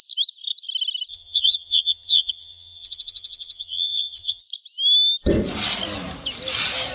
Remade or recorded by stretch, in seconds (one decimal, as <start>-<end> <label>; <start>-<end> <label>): 0.0-1.1 recorded; 1.1-4.4 remade; 4.4-6.9 recorded

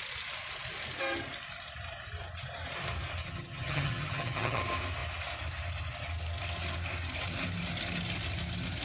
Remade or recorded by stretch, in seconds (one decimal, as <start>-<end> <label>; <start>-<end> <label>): 0.0-3.2 recorded; 3.2-4.6 remade; 4.6-8.8 recorded

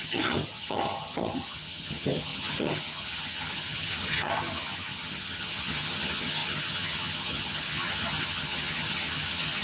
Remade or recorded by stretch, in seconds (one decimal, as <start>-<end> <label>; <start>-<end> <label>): 0.0-9.6 remade

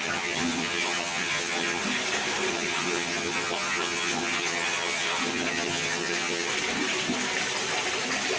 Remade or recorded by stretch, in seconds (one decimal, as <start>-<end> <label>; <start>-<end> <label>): 0.0-1.8 remade; 1.8-2.5 recorded; 2.5-6.5 remade; 6.5-8.4 recorded

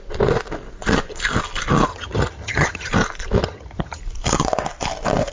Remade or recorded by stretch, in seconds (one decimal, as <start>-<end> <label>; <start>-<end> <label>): 0.0-1.9 recorded; 1.9-2.9 remade; 2.9-3.4 recorded; 3.4-4.0 remade; 4.0-5.3 recorded